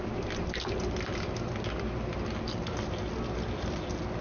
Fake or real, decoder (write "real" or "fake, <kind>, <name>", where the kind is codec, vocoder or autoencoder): real